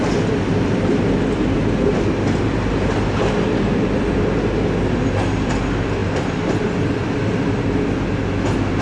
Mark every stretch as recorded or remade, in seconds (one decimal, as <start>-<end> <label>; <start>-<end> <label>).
0.0-8.8 recorded